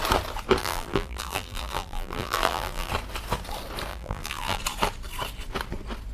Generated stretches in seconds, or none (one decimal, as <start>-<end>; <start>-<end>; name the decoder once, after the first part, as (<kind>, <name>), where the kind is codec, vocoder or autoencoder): 0.6-2.9 (vocoder, BigVGAN v2); 3.9-4.6

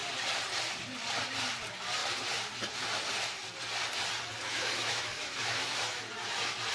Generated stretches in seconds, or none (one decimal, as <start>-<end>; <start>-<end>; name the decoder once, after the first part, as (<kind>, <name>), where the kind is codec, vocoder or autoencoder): 4.5-6.0 (autoencoder, DAC-VAE)

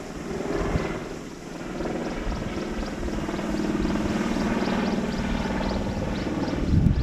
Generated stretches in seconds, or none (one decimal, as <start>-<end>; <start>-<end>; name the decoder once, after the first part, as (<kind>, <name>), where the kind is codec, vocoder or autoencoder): 0.0-2.0 (vocoder, BigVGAN v2); 6.2-7.0

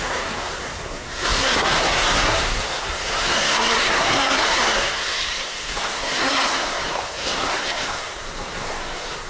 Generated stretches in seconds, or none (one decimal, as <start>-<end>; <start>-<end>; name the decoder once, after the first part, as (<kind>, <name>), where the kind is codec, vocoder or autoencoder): 0.0-9.3 (codec, SNAC)

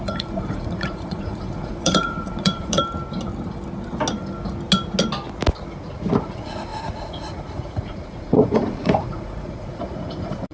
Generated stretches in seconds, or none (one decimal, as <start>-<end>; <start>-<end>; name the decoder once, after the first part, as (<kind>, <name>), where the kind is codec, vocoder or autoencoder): 0.0-2.8 (vocoder, Vocos); 6.2-10.5

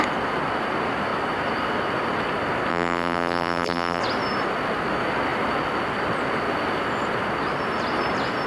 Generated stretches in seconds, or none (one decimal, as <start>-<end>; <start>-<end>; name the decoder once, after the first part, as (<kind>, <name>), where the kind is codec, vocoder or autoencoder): 2.7-4.0 (vocoder, BigVGAN v2)